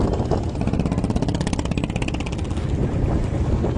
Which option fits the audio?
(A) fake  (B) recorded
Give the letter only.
B